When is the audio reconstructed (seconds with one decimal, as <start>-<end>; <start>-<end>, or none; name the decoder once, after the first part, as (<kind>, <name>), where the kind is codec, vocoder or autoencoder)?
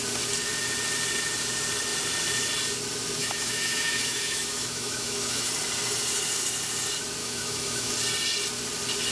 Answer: 3.2-5.5 (autoencoder, DAC-VAE); 7.2-7.9